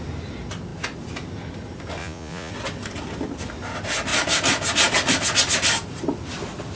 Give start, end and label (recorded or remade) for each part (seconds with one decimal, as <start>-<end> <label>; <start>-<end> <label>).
0.0-2.0 recorded; 2.0-2.5 remade; 2.5-6.8 recorded